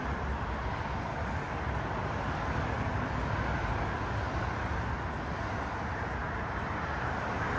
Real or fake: real